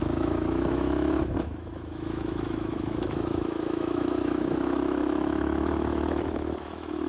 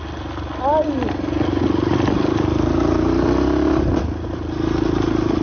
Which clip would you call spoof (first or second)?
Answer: first